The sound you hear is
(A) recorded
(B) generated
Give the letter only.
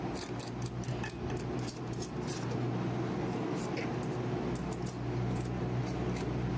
A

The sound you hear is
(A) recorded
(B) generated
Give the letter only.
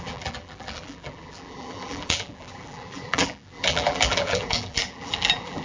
B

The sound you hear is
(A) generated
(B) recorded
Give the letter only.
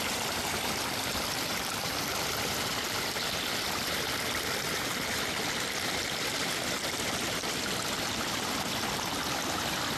A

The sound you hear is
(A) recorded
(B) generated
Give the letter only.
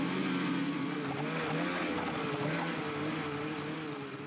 A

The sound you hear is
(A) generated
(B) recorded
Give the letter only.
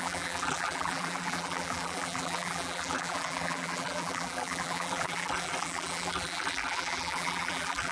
A